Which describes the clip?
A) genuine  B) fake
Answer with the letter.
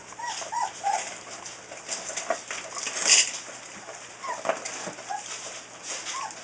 A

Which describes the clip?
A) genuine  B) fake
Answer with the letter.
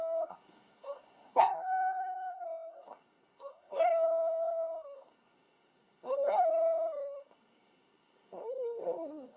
B